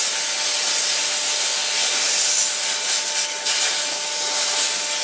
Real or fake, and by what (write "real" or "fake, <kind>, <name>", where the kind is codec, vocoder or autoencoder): real